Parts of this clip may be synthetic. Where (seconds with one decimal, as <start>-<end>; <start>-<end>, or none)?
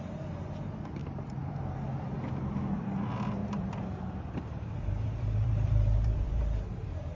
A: 1.0-1.6; 3.4-7.1